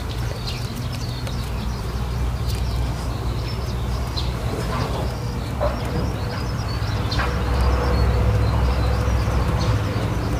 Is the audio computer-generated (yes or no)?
no